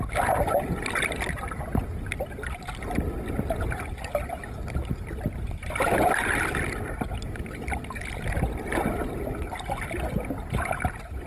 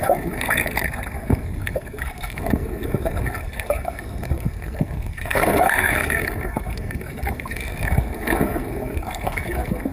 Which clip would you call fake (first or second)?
second